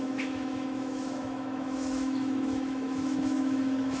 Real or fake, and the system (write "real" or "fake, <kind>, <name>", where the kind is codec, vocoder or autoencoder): fake, autoencoder, DAC-VAE